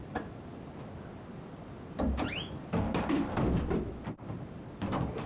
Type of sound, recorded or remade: recorded